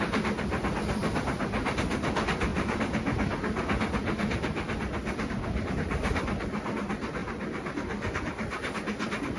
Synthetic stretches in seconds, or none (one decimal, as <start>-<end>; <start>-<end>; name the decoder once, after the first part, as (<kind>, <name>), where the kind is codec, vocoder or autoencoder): none